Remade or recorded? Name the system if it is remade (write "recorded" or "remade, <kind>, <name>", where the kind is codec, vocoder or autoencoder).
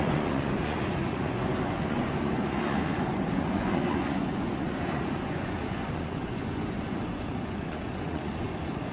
remade, vocoder, Vocos